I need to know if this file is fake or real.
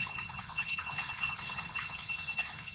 fake